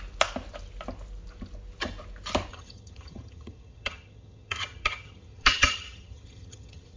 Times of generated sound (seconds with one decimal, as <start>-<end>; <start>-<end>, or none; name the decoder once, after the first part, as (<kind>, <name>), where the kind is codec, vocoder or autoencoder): 2.5-7.0 (vocoder, HiFi-GAN)